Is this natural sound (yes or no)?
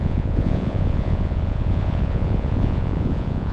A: no